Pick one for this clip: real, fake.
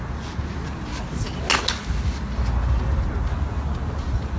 real